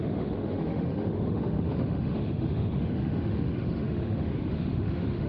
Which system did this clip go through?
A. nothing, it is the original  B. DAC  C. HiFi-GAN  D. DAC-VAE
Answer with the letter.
D